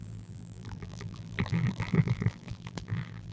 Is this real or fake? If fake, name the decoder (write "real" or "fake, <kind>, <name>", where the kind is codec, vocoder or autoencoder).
fake, vocoder, BigVGAN v2